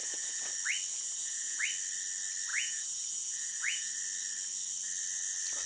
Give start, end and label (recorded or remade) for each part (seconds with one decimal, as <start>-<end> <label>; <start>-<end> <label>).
0.0-0.5 remade; 0.5-0.9 recorded; 0.9-1.6 remade; 1.6-2.5 recorded; 2.5-3.9 remade; 3.9-5.7 recorded